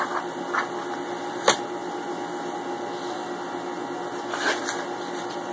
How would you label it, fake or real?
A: real